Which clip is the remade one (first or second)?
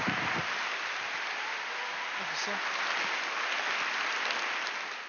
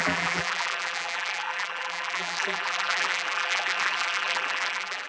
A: second